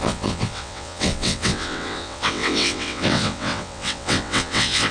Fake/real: fake